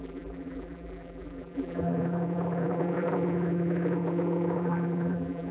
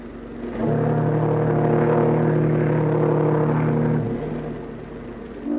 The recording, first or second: second